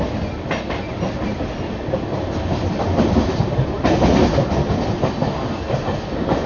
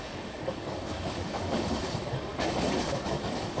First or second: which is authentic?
first